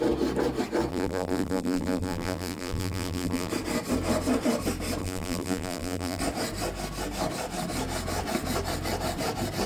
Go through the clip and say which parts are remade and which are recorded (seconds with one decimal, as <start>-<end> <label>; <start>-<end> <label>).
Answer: 0.0-0.9 recorded; 0.9-3.5 remade; 3.5-5.0 recorded; 5.0-6.2 remade; 6.2-9.7 recorded